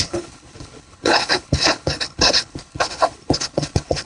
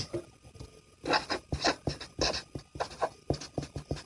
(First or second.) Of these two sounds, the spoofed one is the first